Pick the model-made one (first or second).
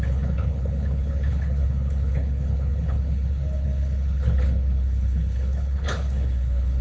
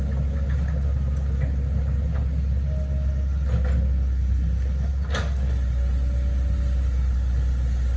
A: first